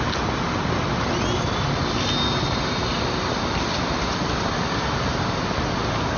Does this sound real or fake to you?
real